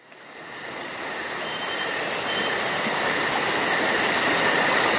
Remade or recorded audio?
recorded